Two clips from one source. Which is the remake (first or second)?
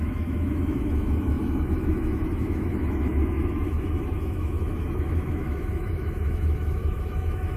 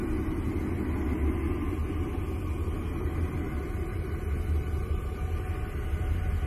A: first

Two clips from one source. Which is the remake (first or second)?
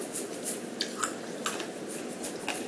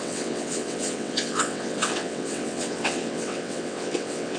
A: second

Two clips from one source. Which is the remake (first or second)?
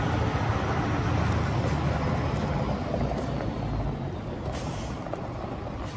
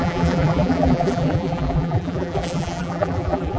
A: second